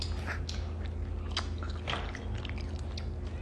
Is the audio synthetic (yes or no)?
no